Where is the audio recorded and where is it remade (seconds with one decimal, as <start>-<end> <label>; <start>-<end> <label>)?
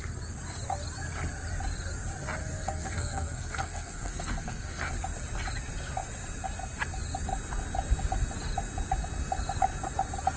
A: 0.0-2.4 recorded; 2.4-4.9 remade; 4.9-10.4 recorded